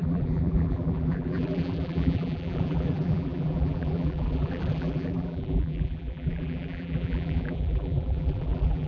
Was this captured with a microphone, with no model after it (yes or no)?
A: no